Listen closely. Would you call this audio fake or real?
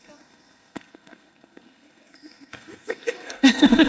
fake